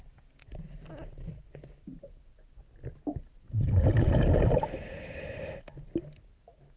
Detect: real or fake real